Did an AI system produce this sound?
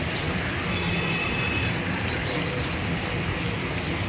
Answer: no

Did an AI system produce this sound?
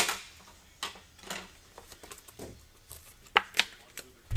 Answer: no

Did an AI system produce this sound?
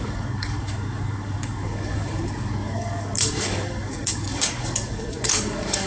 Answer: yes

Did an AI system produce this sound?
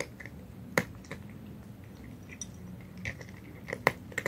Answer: no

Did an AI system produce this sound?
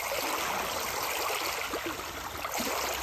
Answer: no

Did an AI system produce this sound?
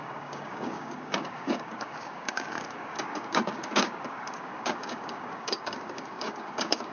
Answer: yes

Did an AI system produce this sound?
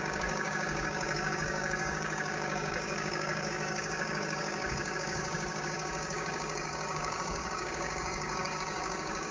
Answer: yes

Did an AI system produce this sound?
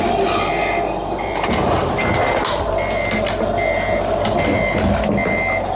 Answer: no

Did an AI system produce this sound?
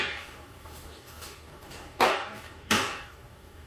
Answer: yes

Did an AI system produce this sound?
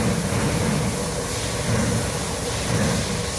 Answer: no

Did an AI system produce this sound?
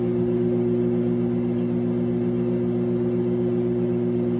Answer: no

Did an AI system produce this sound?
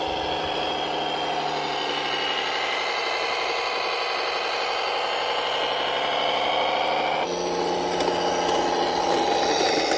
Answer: no